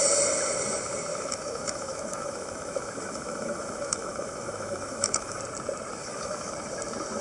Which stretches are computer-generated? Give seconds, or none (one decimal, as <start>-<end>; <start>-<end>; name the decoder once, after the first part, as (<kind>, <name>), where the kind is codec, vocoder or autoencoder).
1.1-5.4 (autoencoder, DAC-VAE); 6.0-6.5